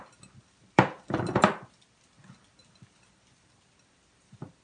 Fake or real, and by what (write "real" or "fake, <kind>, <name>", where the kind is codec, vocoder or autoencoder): fake, vocoder, BigVGAN v2